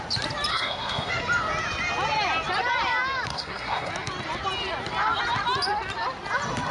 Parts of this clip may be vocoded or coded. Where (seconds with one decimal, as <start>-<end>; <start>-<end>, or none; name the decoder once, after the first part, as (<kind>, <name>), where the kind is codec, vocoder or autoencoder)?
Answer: 0.5-1.1 (codec, SNAC); 3.3-3.9